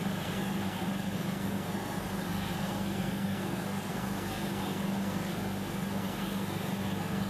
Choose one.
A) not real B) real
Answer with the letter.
A